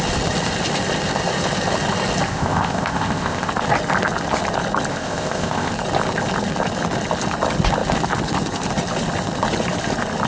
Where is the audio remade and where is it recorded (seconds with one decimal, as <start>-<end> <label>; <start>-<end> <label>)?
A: 0.0-2.3 recorded; 2.3-3.5 remade; 3.5-4.9 recorded; 4.9-5.7 remade; 5.7-10.3 recorded